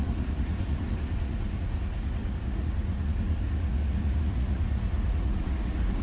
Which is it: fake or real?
fake